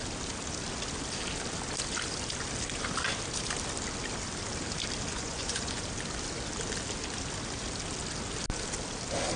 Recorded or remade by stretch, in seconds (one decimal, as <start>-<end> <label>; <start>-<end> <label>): 0.0-5.1 recorded; 5.1-5.8 remade; 5.8-9.4 recorded